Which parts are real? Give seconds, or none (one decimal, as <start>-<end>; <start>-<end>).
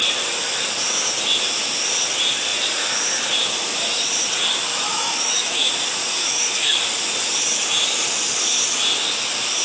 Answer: 0.0-4.7; 5.7-6.2; 6.8-9.6